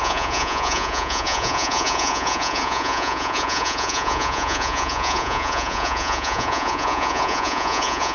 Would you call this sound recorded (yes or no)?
no